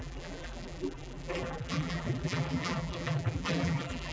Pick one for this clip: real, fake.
fake